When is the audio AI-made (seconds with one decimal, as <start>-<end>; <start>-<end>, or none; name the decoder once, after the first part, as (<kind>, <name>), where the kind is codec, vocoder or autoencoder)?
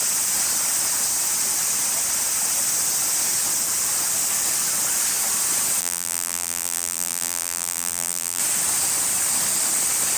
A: 5.8-8.4 (vocoder, BigVGAN v2)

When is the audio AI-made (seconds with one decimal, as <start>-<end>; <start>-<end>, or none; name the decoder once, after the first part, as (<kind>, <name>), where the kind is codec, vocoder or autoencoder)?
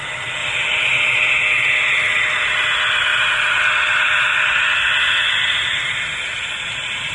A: 0.4-1.0 (vocoder, BigVGAN v2); 3.1-3.6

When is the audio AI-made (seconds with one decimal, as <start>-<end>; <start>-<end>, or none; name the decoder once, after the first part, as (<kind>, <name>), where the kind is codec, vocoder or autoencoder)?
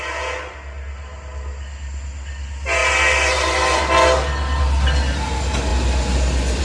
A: none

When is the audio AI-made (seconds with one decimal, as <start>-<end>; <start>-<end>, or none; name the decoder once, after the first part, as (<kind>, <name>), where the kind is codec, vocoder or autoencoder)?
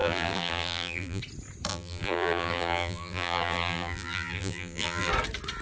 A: 0.0-1.2 (vocoder, BigVGAN v2); 1.7-5.1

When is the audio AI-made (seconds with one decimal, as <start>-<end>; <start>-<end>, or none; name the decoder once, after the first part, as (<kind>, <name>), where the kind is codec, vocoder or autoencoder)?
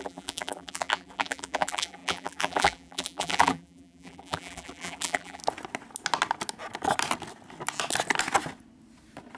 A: 0.0-5.4 (vocoder, BigVGAN v2)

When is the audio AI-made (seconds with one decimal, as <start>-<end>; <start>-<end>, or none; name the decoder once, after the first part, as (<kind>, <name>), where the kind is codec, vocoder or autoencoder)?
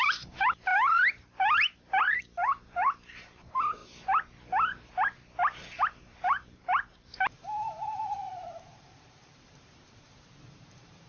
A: 0.0-3.8 (vocoder, BigVGAN v2); 5.8-11.1